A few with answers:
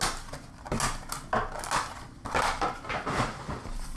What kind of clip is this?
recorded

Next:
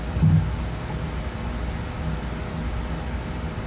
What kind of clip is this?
recorded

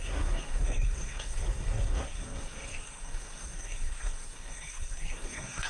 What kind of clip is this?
remade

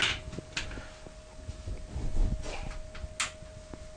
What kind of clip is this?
recorded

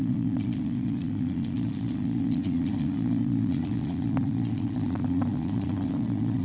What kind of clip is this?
remade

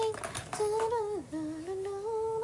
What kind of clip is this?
recorded